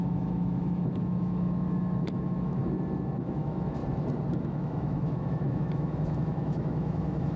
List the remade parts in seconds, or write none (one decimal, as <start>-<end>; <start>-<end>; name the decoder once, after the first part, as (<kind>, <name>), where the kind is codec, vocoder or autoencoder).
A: 0.0-2.6 (autoencoder, DAC-VAE); 3.2-3.8; 4.3-7.4

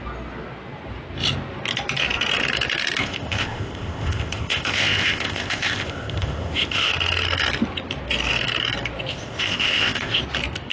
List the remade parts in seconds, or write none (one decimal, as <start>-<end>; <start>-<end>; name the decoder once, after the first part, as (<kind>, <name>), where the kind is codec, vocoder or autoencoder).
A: 3.0-6.9 (codec, ZipCodec); 9.1-10.2

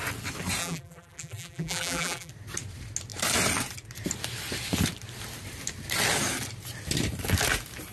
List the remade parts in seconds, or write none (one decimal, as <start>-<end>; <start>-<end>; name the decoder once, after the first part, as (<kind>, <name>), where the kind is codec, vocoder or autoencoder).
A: 0.6-2.3 (vocoder, BigVGAN v2)

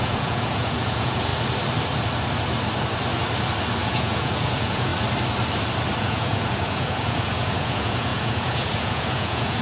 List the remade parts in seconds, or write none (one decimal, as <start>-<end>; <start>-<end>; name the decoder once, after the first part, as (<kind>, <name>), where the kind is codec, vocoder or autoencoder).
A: 0.0-1.3 (vocoder, Vocos); 3.8-4.9; 6.0-9.6

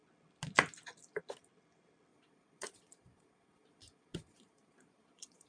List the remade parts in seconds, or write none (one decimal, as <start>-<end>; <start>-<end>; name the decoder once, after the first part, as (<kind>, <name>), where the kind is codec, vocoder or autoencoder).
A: 2.1-5.5 (vocoder, Vocos)

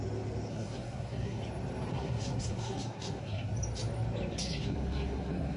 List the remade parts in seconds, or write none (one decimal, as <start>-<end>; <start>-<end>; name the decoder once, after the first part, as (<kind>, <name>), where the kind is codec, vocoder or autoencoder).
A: 0.5-1.4 (codec, SNAC); 1.9-3.5; 4.3-5.6

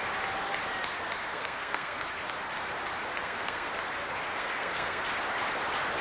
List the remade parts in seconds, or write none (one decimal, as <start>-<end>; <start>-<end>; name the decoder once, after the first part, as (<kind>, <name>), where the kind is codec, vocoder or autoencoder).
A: 1.3-2.0 (codec, SNAC); 3.1-3.7; 4.3-5.0

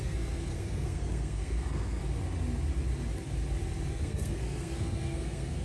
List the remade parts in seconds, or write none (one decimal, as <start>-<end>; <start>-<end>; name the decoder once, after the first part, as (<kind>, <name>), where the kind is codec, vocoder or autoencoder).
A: 0.0-2.0 (codec, SNAC); 3.9-5.6